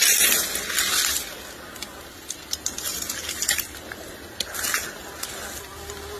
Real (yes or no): yes